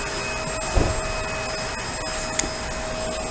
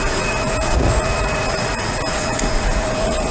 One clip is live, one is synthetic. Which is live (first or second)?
first